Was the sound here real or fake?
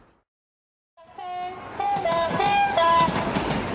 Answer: real